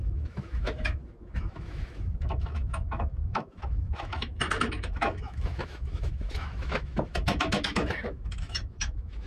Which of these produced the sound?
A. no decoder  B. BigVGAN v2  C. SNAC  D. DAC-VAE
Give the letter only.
D